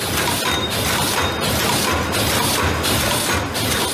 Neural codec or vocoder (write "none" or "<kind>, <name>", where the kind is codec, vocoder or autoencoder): none